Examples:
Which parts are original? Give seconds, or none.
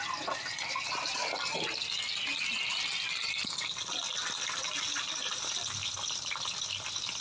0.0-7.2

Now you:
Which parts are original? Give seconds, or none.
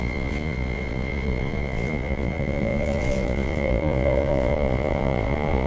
none